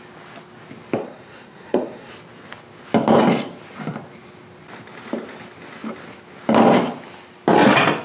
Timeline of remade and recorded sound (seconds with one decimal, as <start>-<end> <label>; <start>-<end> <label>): 0.0-1.0 recorded; 1.0-2.1 remade; 2.1-8.0 recorded